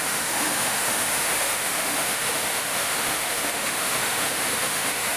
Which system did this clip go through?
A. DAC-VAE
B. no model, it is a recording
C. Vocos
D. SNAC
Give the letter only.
A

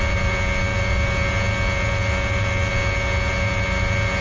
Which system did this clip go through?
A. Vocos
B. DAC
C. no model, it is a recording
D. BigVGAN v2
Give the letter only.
C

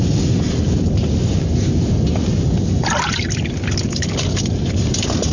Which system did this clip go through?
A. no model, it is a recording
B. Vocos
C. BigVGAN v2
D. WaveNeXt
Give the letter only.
A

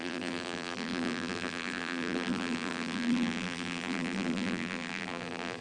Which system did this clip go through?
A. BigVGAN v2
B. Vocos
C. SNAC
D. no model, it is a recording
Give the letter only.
A